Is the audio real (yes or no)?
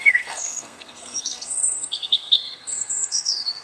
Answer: no